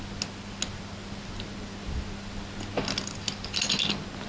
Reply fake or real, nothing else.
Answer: real